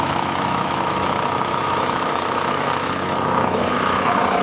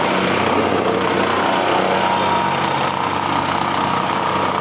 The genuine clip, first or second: second